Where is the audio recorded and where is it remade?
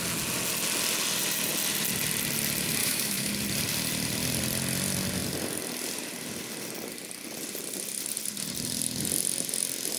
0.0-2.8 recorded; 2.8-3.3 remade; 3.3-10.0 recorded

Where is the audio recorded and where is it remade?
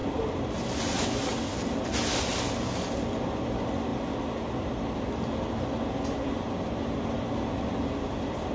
0.0-8.5 recorded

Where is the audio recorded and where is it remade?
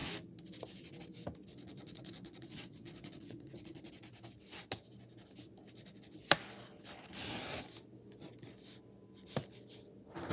0.0-1.5 recorded; 1.5-3.9 remade; 3.9-10.3 recorded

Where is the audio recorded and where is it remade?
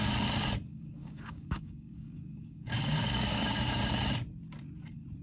0.0-0.7 recorded; 0.7-3.8 remade; 3.8-5.2 recorded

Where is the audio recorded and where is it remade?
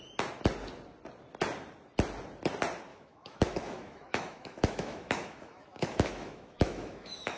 0.0-2.9 recorded; 2.9-7.4 remade